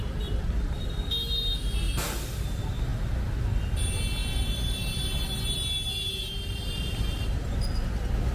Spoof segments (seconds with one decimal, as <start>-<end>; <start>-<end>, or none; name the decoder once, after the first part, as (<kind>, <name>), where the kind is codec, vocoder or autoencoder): none